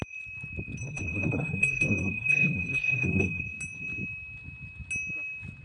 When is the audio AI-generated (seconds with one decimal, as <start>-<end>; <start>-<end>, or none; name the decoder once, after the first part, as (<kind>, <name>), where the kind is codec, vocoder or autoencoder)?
0.8-3.4 (codec, SNAC)